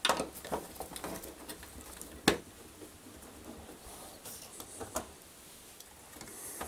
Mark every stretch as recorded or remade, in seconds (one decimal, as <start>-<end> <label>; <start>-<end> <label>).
0.0-6.7 recorded